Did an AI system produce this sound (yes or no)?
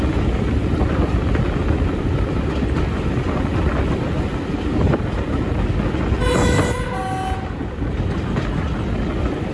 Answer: no